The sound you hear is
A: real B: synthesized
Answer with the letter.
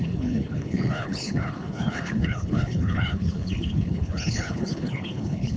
B